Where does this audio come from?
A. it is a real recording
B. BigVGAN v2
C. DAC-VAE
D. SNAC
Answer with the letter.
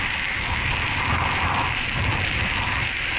A